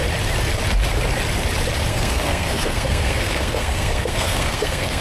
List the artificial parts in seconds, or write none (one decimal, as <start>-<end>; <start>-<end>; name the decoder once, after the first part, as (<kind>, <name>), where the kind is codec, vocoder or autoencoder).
1.9-5.0 (codec, SNAC)